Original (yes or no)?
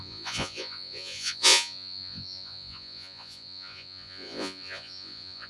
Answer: no